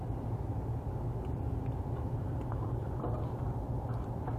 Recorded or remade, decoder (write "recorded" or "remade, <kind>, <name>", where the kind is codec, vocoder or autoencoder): recorded